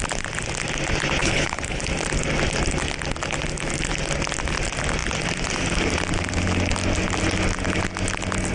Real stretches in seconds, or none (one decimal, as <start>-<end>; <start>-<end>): 0.0-1.2; 1.8-8.5